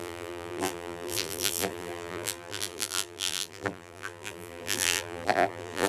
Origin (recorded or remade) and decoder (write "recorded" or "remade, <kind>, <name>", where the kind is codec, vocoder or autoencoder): remade, vocoder, BigVGAN v2